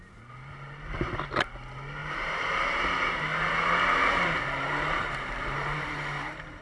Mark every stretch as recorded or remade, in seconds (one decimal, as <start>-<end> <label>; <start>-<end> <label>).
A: 0.0-2.0 recorded; 2.0-2.9 remade; 2.9-4.0 recorded; 4.0-6.6 remade